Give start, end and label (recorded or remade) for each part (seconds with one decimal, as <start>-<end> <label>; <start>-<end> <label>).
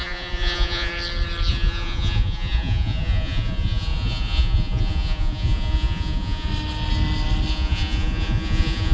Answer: 0.0-0.9 remade; 0.9-1.5 recorded; 1.5-6.5 remade; 6.5-7.5 recorded; 7.5-8.9 remade